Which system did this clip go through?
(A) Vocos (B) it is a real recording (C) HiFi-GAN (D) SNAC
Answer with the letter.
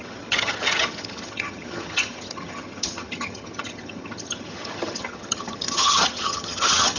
C